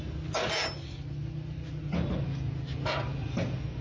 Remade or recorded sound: recorded